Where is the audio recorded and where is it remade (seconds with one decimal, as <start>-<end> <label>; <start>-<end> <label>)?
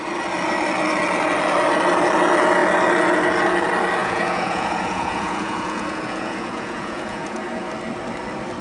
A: 0.0-4.0 recorded; 4.0-7.7 remade; 7.7-8.6 recorded